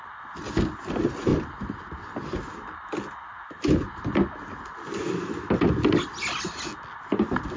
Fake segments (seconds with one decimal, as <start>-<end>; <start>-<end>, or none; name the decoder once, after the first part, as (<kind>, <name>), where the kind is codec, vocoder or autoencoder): none